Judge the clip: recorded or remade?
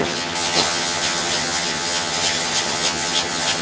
remade